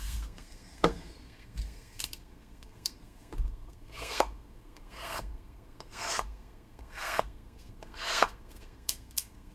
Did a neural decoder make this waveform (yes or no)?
yes